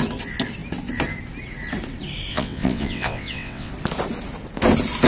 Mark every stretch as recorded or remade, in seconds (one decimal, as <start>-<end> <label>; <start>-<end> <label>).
0.0-2.3 recorded; 2.3-3.7 remade; 3.7-5.1 recorded